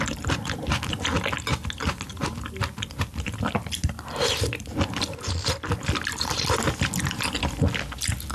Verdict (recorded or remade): recorded